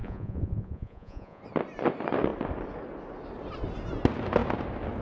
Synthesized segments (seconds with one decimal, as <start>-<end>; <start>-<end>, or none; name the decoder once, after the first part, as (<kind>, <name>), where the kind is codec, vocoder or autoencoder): 0.0-1.4 (vocoder, Vocos)